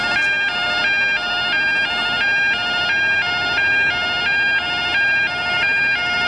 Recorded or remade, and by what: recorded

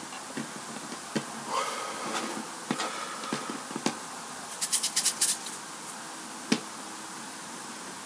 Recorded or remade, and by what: recorded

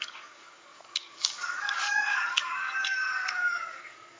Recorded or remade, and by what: remade, codec, DAC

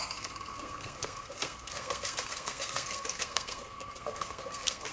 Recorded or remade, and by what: remade, codec, SNAC